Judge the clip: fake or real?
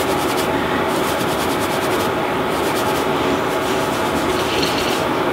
real